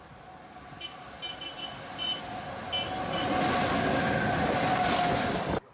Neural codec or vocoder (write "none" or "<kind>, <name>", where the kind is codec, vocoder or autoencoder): none